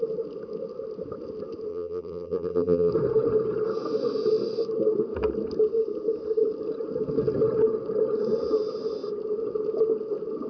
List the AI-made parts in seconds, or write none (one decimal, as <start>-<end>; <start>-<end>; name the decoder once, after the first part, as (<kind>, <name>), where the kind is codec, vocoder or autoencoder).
1.7-2.9 (vocoder, BigVGAN v2)